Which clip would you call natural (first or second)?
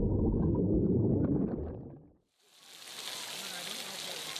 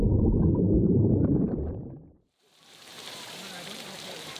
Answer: first